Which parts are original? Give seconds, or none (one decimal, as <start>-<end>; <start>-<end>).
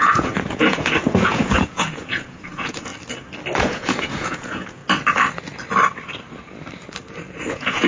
2.9-3.6; 4.8-7.5